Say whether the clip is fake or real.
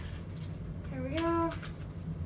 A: real